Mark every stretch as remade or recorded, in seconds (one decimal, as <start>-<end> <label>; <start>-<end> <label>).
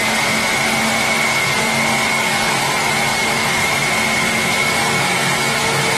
0.0-2.1 recorded; 2.1-2.6 remade; 2.6-3.1 recorded; 3.1-3.7 remade; 3.7-4.6 recorded; 4.6-5.6 remade; 5.6-6.0 recorded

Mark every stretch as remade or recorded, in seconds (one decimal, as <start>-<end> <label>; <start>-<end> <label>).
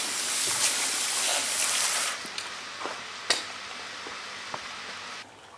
0.0-5.6 recorded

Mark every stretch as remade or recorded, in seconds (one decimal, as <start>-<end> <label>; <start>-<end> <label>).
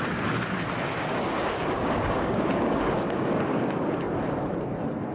0.0-1.0 recorded; 1.0-4.1 remade; 4.1-5.1 recorded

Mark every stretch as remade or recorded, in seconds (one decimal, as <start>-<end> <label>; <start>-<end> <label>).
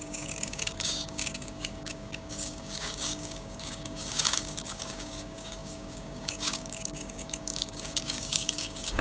0.0-9.0 remade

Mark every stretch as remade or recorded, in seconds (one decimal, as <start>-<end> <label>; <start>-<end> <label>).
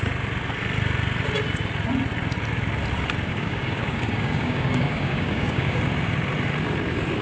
0.0-3.3 recorded; 3.3-5.8 remade; 5.8-7.2 recorded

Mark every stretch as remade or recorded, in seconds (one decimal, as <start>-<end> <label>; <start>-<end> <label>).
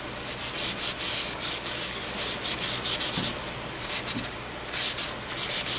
0.0-1.2 recorded; 1.2-2.0 remade; 2.0-5.8 recorded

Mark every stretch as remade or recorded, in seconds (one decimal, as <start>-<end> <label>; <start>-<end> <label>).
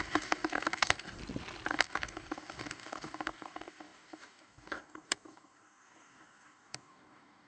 0.0-1.2 remade; 1.2-1.7 recorded; 1.7-7.5 remade